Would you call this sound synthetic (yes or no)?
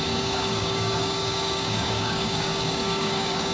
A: yes